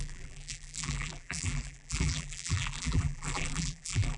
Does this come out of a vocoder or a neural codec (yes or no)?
yes